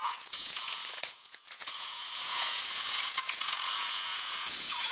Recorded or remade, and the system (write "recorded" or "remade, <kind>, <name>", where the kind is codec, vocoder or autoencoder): remade, vocoder, Vocos